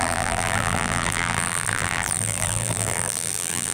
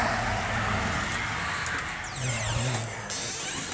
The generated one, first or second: first